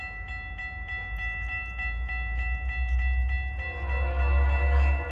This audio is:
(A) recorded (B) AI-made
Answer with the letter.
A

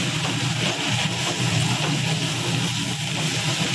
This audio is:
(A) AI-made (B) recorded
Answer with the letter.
B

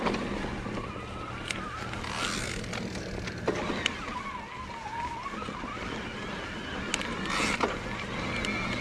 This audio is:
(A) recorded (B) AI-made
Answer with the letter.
A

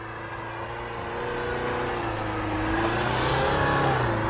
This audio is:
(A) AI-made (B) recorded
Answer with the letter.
B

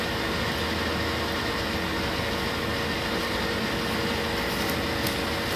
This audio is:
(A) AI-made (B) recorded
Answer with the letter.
B